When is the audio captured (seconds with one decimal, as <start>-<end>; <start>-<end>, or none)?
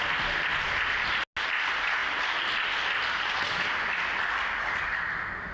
0.0-5.5